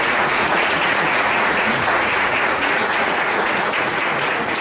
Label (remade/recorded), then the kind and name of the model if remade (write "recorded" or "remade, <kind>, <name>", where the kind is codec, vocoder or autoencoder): remade, vocoder, Vocos